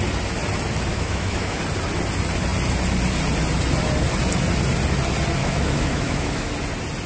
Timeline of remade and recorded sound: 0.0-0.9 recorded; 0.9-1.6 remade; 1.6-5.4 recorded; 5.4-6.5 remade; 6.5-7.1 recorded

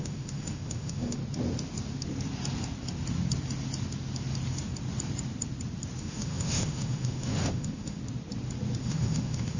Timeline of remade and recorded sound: 0.0-1.2 remade; 1.2-6.0 recorded; 6.0-8.0 remade; 8.0-8.8 recorded; 8.8-9.6 remade